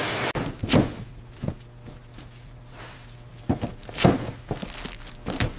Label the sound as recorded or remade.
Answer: recorded